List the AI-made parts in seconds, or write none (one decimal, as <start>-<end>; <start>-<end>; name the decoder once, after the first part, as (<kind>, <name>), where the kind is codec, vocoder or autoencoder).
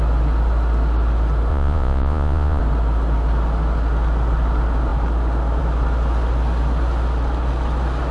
1.5-2.6 (vocoder, Vocos)